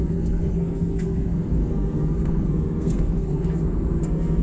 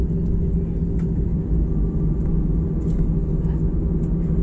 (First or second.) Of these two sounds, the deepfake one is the first